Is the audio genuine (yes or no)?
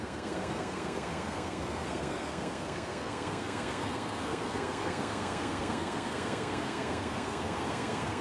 no